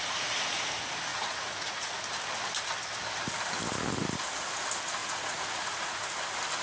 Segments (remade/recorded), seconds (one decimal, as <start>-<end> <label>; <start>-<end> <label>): 0.0-1.1 recorded; 1.1-2.0 remade; 2.0-5.0 recorded; 5.0-6.1 remade; 6.1-6.6 recorded